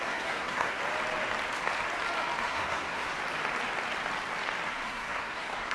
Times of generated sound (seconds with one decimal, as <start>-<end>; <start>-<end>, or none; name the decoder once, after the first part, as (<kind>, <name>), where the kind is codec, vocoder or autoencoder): 0.0-0.8 (codec, SNAC); 2.4-3.1; 4.7-5.7